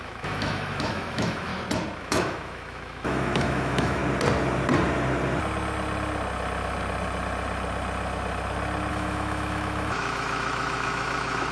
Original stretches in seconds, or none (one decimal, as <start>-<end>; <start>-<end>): 1.5-2.0; 4.0-8.9